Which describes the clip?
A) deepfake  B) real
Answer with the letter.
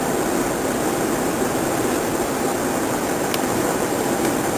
B